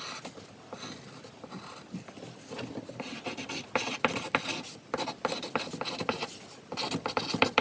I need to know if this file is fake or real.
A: real